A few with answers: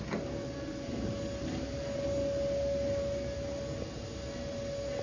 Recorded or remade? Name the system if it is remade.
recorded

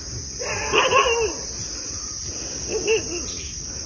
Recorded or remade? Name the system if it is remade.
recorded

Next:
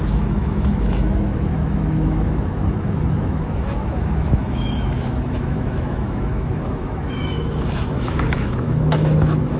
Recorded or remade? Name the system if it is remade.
remade, autoencoder, DAC-VAE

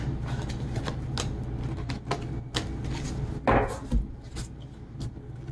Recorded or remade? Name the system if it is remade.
recorded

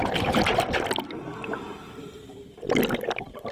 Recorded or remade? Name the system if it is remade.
recorded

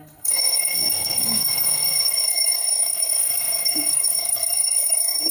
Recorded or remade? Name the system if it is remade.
remade, codec, SNAC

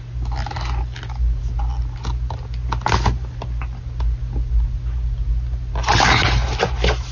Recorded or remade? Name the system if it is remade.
recorded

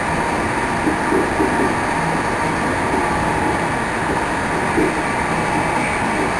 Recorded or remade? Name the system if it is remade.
recorded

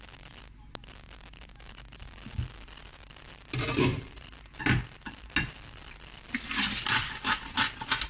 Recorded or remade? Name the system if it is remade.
recorded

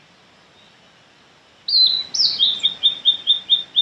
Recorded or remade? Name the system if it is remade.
recorded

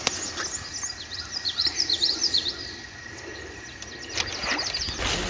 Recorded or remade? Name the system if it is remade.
recorded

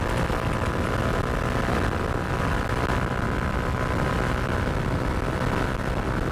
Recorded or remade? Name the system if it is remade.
recorded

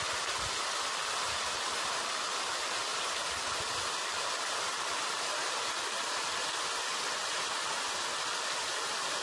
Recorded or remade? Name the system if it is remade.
recorded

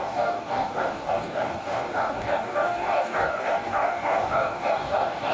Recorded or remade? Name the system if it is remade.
remade, codec, DAC